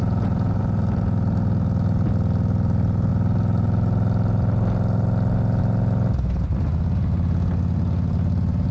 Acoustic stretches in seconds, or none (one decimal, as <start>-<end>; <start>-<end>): 0.6-8.7